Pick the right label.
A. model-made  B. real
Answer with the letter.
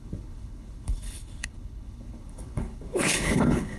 A